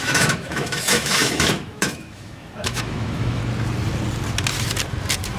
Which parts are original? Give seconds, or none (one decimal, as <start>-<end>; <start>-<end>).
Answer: 3.4-5.4